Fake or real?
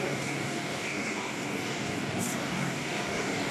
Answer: fake